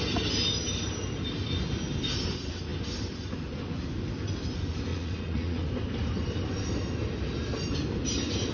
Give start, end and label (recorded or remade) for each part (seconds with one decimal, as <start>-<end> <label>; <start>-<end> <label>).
0.0-4.9 recorded; 4.9-5.7 remade; 5.7-8.5 recorded